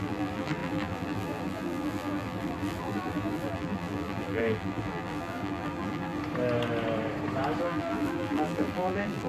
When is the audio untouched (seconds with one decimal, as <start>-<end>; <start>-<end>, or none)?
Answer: 6.2-7.6